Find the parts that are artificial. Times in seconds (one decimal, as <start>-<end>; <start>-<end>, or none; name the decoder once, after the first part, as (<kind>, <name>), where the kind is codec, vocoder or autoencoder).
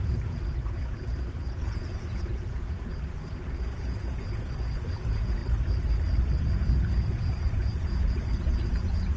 0.0-5.4 (vocoder, Vocos); 6.4-9.2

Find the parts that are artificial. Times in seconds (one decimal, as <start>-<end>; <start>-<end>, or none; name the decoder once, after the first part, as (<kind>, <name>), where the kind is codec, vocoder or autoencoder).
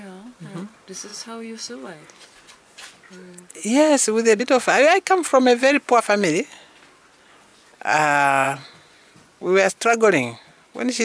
1.1-4.4 (vocoder, Vocos); 5.3-6.0; 7.5-9.7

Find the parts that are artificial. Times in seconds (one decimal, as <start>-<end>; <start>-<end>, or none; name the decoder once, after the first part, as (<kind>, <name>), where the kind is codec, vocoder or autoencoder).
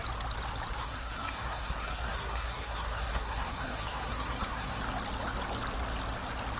0.8-4.8 (codec, SNAC)